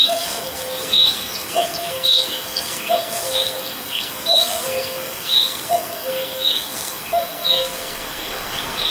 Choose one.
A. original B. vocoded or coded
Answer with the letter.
B